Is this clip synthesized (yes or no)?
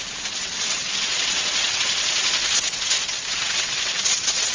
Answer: yes